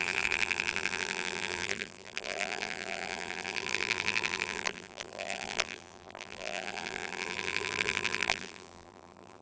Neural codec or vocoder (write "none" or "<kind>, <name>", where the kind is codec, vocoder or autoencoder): vocoder, BigVGAN v2